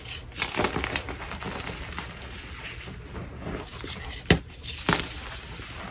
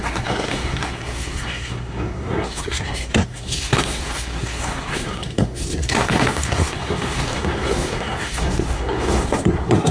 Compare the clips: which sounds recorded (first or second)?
first